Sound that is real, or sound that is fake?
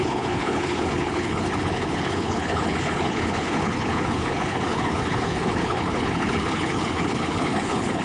fake